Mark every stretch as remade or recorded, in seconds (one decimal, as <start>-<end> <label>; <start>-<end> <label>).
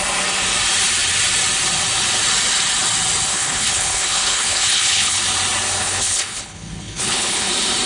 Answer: 0.0-3.3 recorded; 3.3-5.2 remade; 5.2-5.8 recorded; 5.8-7.5 remade; 7.5-7.9 recorded